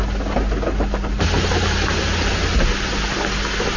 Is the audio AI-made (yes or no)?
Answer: no